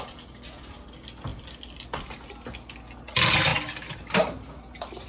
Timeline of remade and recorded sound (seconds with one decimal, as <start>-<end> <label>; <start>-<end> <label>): 0.0-5.1 recorded